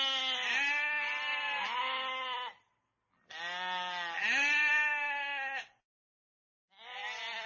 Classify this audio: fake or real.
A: real